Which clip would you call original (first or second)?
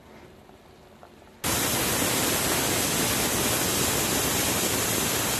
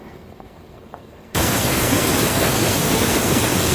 first